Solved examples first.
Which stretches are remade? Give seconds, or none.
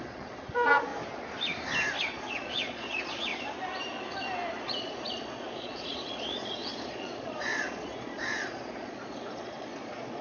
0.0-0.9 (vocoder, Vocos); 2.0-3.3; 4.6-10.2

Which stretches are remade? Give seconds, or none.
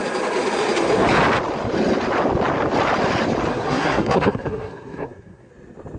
3.5-5.5 (codec, SNAC)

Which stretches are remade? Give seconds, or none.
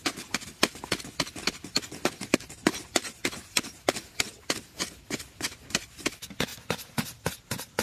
none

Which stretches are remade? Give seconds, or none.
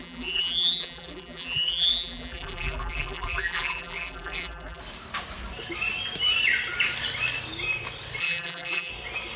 0.0-4.8 (vocoder, BigVGAN v2); 8.2-8.9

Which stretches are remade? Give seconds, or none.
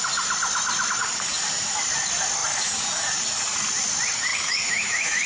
4.3-5.3 (autoencoder, DAC-VAE)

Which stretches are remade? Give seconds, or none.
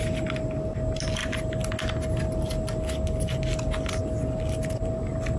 none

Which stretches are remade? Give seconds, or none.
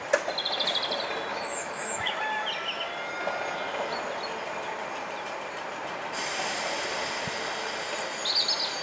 1.3-2.1 (autoencoder, DAC-VAE)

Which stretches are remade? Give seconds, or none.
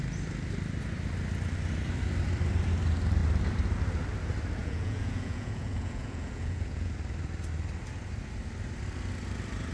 4.6-6.9 (vocoder, Vocos)